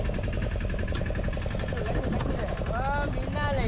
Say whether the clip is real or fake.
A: real